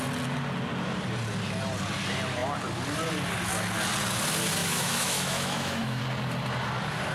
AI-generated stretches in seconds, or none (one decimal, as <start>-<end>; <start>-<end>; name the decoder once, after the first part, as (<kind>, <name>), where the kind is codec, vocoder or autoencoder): 4.6-6.0 (autoencoder, DAC-VAE)